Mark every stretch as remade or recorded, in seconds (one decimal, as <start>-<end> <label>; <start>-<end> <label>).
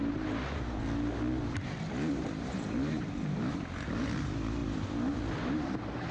0.0-6.1 recorded